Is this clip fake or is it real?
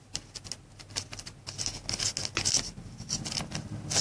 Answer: real